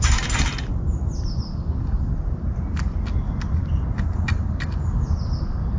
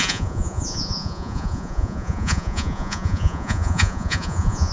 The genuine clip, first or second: first